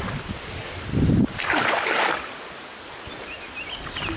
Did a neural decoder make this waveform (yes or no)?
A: no